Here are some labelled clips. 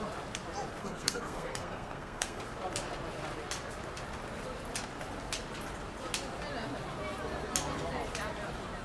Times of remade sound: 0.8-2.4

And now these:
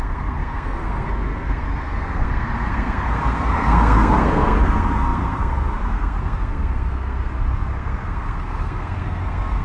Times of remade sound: 0.0-9.6

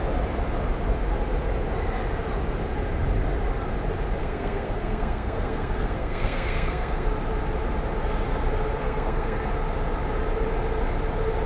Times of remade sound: 4.2-7.1; 8.8-9.4

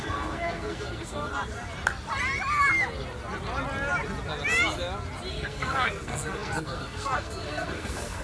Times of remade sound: 0.0-1.3; 5.3-8.2

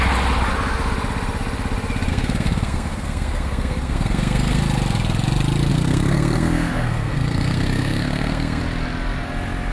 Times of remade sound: 2.1-4.6; 5.7-8.6

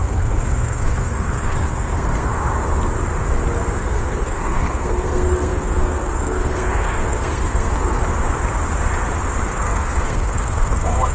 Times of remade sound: 0.0-2.3; 3.8-8.0; 9.5-11.1